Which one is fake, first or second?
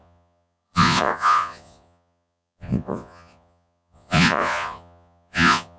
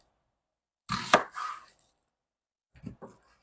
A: first